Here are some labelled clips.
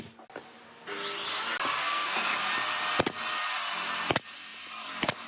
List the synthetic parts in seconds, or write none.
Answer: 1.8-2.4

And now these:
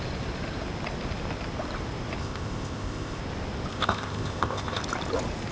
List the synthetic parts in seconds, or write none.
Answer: 2.2-3.2; 3.7-4.8